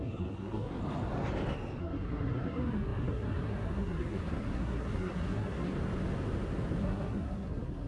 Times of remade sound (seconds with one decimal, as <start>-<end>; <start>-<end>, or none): 0.0-0.8; 1.8-5.7; 6.8-7.9